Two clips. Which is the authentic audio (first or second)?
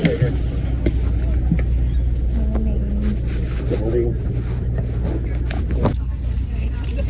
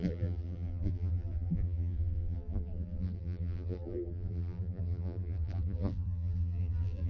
first